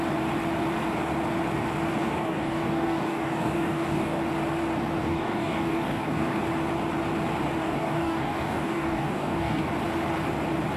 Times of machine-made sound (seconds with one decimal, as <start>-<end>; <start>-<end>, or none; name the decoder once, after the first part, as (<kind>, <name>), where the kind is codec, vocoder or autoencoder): 2.0-4.2 (codec, DAC); 5.0-6.4; 7.6-9.7

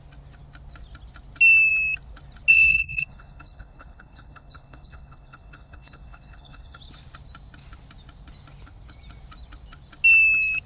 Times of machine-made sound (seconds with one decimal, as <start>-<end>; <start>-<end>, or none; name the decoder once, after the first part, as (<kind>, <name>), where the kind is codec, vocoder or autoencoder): 2.5-6.8 (codec, HILCodec)

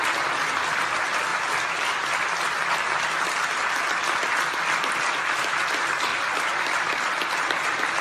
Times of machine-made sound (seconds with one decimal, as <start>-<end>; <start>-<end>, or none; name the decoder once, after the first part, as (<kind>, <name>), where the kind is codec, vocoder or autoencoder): none